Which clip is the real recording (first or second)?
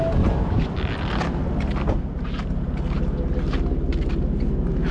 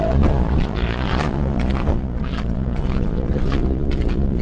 first